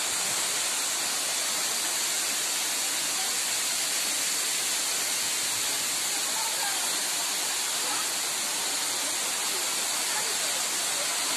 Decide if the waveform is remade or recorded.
recorded